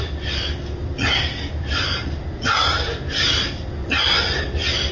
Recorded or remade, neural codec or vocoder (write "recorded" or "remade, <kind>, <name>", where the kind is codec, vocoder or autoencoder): recorded